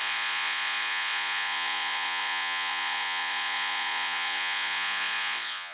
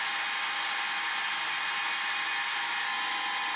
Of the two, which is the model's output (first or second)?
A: first